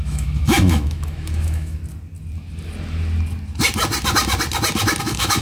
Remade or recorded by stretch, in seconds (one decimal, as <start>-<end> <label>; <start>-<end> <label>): 0.0-1.8 remade; 1.8-5.0 recorded; 5.0-5.4 remade